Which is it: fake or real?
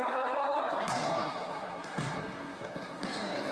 fake